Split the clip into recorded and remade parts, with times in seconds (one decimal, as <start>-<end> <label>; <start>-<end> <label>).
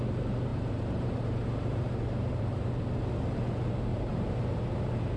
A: 0.0-0.5 recorded; 0.5-2.8 remade; 2.8-3.9 recorded; 3.9-4.6 remade; 4.6-5.2 recorded